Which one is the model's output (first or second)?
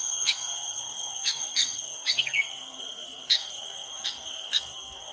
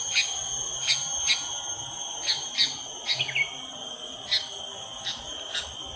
first